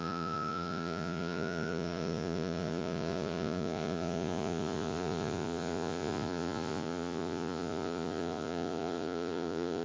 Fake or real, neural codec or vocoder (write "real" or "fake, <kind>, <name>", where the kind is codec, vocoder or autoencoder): fake, vocoder, Vocos